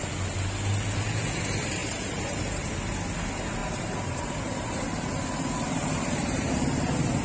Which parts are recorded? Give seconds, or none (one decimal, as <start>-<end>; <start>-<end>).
0.0-1.8; 2.7-3.6; 6.5-7.2